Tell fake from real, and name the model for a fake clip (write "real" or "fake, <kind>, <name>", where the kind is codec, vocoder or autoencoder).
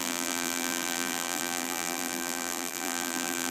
fake, vocoder, BigVGAN v2